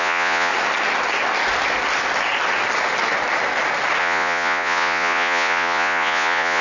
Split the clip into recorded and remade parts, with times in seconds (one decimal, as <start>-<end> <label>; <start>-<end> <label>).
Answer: 0.0-0.5 remade; 0.5-4.0 recorded; 4.0-6.6 remade